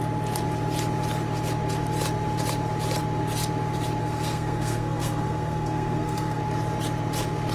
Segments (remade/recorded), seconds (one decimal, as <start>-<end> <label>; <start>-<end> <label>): 0.0-4.0 recorded; 4.0-6.4 remade; 6.4-7.5 recorded